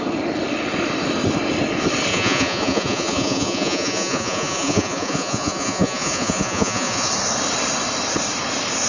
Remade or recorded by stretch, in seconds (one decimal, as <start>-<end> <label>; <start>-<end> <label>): 0.0-2.1 recorded; 2.1-7.1 remade; 7.1-8.9 recorded